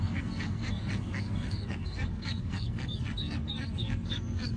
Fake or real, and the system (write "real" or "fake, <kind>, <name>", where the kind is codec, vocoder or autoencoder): fake, codec, SNAC